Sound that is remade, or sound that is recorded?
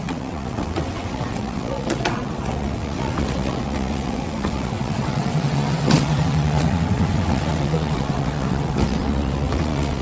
remade